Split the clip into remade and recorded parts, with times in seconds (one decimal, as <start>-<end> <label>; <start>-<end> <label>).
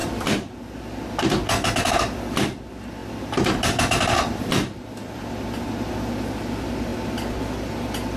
0.0-0.5 remade; 0.5-3.0 recorded; 3.0-5.6 remade; 5.6-8.2 recorded